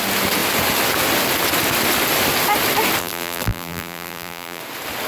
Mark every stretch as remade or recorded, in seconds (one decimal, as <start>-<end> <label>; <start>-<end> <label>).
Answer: 0.0-3.0 recorded; 3.0-4.6 remade; 4.6-5.1 recorded